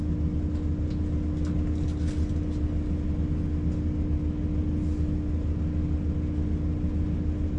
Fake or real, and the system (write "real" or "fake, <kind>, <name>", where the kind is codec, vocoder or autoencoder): real